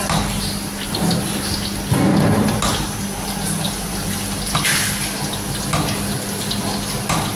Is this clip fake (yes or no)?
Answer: no